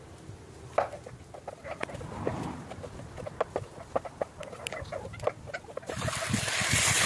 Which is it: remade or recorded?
recorded